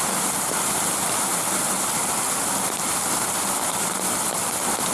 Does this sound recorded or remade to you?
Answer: recorded